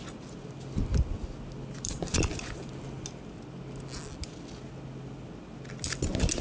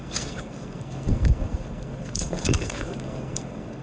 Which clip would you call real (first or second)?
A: first